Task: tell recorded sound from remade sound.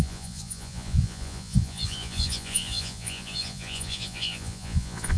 remade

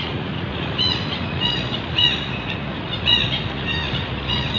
remade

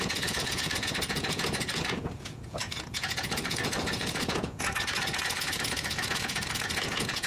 remade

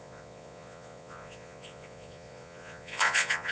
remade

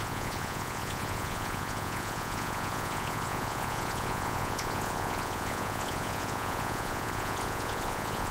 remade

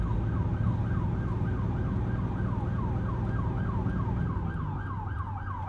recorded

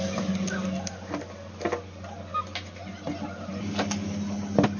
recorded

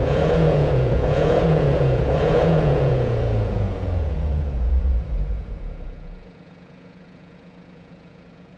remade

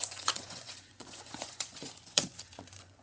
remade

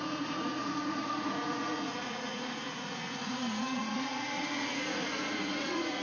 remade